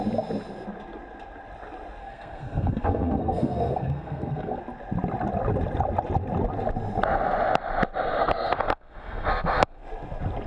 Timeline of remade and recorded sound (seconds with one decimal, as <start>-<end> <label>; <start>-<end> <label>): 0.0-2.0 recorded; 2.0-4.6 remade; 4.6-8.2 recorded; 8.2-9.8 remade; 9.8-10.5 recorded